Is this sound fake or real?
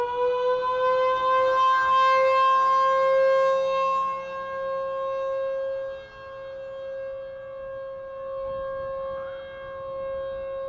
real